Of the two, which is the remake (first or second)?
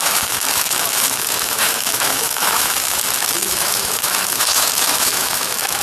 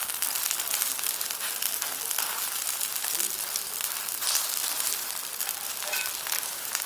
first